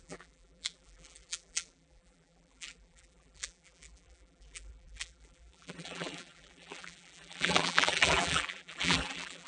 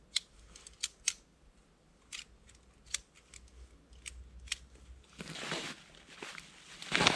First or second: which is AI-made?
first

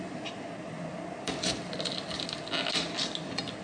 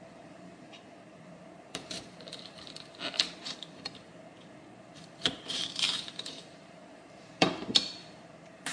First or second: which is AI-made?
second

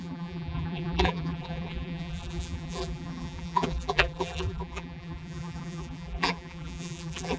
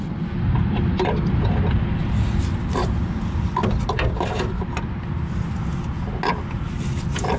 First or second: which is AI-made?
first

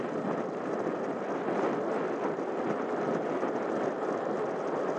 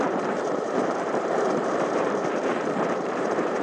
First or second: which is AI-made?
second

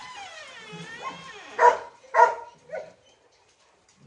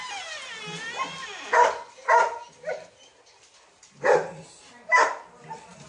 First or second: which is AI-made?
first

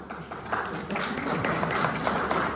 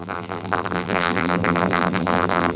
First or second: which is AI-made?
second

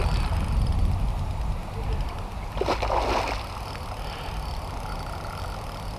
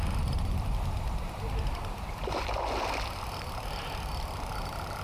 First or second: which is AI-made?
second